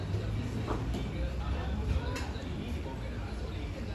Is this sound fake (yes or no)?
no